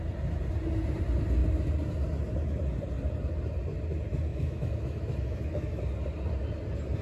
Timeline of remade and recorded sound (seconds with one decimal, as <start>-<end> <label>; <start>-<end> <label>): 0.0-4.3 recorded; 4.3-5.8 remade; 5.8-7.0 recorded